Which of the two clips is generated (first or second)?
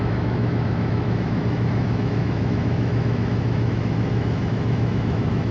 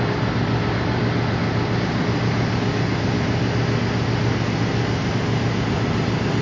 first